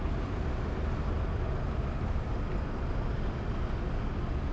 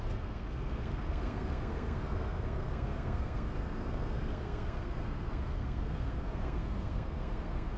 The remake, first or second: second